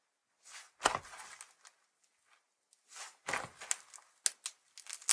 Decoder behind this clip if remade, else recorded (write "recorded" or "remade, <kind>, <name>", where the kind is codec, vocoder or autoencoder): recorded